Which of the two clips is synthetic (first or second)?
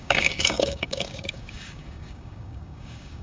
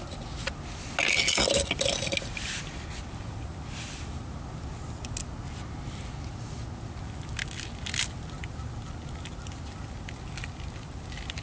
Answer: first